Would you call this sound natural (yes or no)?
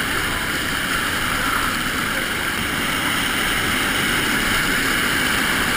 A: yes